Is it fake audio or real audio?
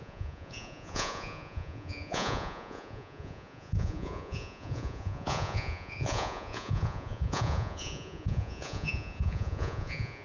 fake